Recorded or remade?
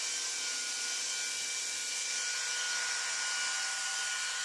recorded